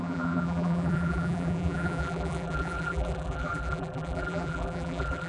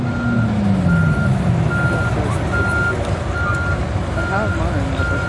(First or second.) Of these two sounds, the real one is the second